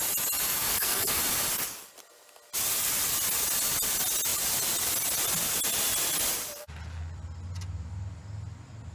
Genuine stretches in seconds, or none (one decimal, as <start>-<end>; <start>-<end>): 0.0-0.7; 1.2-8.9